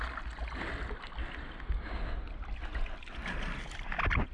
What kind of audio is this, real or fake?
real